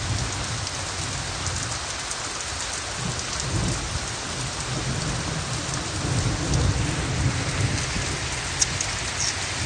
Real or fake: real